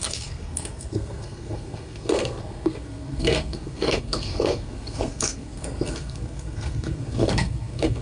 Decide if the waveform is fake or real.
fake